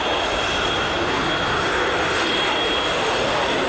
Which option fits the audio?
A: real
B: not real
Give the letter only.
A